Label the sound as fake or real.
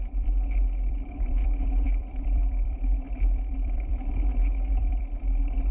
fake